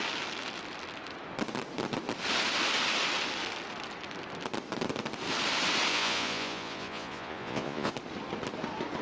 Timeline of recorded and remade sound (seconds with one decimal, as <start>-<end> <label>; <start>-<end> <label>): 0.0-5.9 recorded; 5.9-7.9 remade; 7.9-9.0 recorded